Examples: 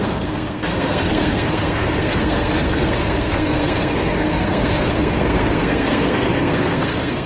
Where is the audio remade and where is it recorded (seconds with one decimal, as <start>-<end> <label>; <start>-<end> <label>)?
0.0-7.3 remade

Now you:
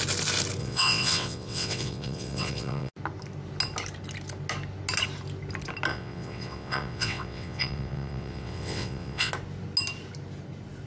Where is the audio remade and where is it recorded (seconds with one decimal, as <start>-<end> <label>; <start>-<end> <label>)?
0.0-0.6 recorded; 0.6-2.9 remade; 2.9-5.9 recorded; 5.9-9.3 remade; 9.3-10.9 recorded

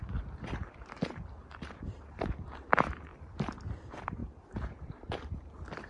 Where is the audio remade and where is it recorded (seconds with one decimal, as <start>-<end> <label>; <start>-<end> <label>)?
0.0-3.1 remade; 3.1-3.8 recorded; 3.8-5.9 remade

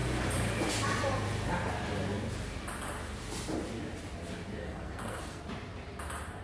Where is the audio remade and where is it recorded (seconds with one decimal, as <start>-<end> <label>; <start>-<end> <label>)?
0.0-4.6 recorded; 4.6-5.4 remade; 5.4-6.4 recorded

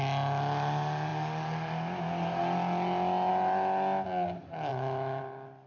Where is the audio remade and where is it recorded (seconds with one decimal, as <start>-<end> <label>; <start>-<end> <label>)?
0.0-4.7 recorded; 4.7-5.2 remade; 5.2-5.7 recorded

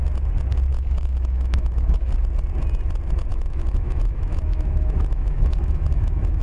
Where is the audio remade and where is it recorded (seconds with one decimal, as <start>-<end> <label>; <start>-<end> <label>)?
0.0-0.7 recorded; 0.7-2.1 remade; 2.1-3.3 recorded; 3.3-6.4 remade

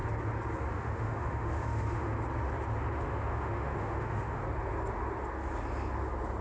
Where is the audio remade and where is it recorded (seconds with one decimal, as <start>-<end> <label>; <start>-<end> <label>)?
0.0-0.7 recorded; 0.7-2.1 remade; 2.1-2.9 recorded; 2.9-4.4 remade; 4.4-6.4 recorded

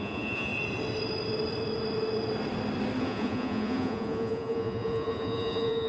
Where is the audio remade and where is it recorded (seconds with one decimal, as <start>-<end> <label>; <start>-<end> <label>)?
0.0-0.5 remade; 0.5-3.0 recorded; 3.0-5.9 remade